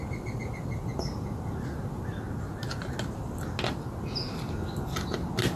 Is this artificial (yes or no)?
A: no